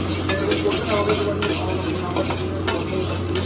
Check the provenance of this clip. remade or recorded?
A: recorded